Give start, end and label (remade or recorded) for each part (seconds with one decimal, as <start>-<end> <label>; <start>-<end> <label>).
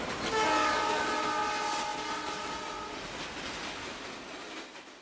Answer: 0.0-0.6 recorded; 0.6-1.1 remade; 1.1-5.0 recorded